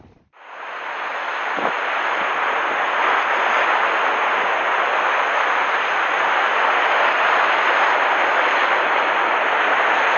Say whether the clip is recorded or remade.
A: recorded